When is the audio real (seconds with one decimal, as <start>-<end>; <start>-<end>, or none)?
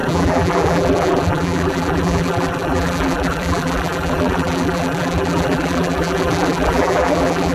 none